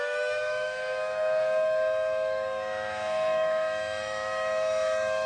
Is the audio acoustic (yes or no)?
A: no